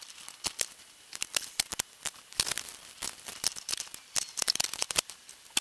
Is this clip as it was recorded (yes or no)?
no